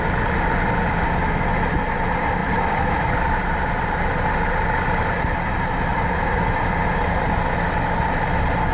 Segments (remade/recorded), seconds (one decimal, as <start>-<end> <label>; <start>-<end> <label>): 0.0-2.4 recorded; 2.4-3.5 remade; 3.5-5.9 recorded; 5.9-6.5 remade; 6.5-8.7 recorded